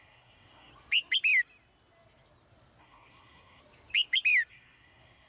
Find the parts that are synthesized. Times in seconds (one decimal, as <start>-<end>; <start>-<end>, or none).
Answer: 0.0-0.7; 2.8-3.6; 4.5-5.3